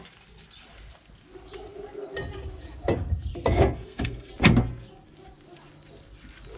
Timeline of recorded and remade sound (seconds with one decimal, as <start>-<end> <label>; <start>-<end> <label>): 0.0-3.3 recorded; 3.3-4.3 remade; 4.3-6.6 recorded